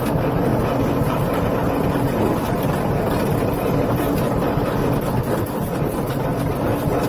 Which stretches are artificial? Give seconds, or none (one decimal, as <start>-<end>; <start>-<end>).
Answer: none